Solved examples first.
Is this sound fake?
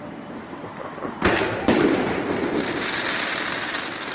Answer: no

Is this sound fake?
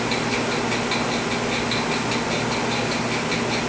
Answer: no